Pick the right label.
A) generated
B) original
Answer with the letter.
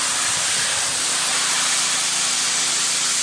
B